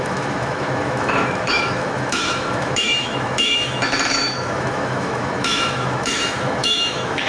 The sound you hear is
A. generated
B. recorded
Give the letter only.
A